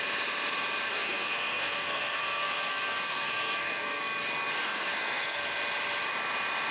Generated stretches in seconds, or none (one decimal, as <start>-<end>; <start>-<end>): 0.9-4.0; 4.6-5.4